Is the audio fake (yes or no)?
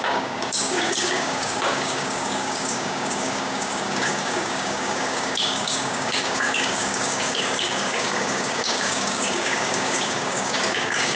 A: yes